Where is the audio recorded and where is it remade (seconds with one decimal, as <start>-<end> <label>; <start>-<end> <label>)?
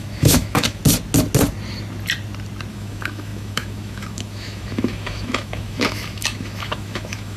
0.0-0.8 remade; 0.8-2.7 recorded; 2.7-7.4 remade